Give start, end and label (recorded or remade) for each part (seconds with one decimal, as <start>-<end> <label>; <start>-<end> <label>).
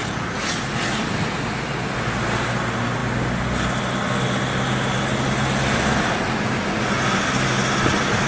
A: 0.0-8.3 recorded